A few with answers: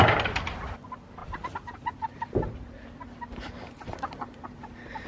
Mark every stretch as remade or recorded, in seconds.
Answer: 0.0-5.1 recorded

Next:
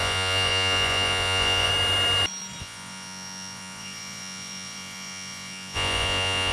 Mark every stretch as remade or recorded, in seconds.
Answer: 0.0-1.7 remade; 1.7-2.6 recorded; 2.6-6.5 remade

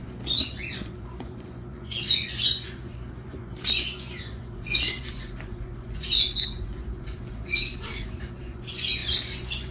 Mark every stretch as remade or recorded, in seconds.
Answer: 0.0-9.7 remade